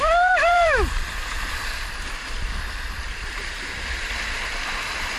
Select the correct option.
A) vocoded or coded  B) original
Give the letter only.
A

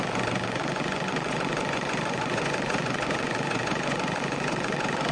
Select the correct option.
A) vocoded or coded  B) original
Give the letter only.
A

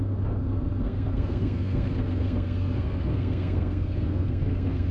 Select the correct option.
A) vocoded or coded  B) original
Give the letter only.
A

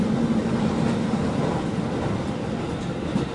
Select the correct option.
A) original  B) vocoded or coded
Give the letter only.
A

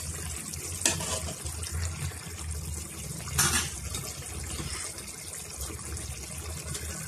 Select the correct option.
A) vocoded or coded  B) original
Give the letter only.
B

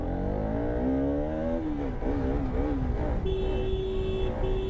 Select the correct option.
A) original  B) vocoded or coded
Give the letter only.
A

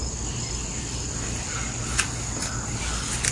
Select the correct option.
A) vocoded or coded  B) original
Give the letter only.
B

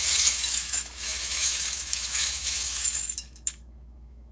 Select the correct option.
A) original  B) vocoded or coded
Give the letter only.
B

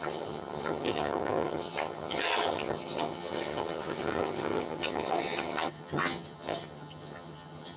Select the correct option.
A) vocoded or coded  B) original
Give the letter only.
A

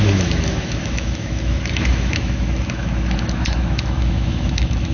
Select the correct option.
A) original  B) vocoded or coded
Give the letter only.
B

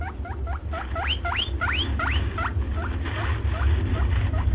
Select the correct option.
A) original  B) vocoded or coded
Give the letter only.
A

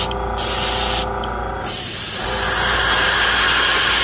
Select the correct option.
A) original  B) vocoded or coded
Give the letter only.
A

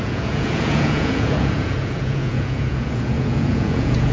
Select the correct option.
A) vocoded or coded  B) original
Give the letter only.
A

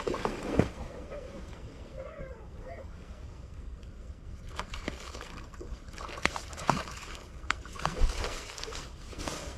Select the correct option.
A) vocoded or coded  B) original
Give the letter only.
A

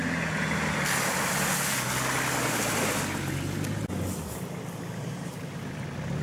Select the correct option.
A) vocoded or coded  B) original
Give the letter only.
B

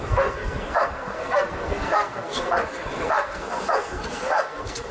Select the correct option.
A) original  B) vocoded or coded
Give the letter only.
B